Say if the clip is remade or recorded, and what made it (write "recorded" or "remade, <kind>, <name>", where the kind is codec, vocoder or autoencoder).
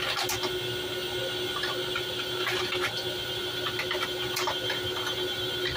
recorded